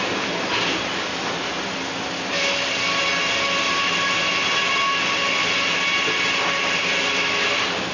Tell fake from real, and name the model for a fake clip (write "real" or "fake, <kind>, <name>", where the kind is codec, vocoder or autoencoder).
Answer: real